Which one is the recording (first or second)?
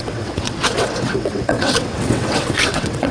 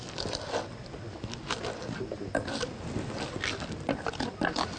second